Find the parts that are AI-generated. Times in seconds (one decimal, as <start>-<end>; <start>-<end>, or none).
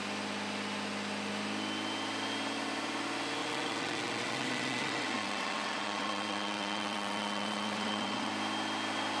3.4-8.3